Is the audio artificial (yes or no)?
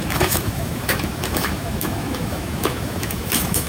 yes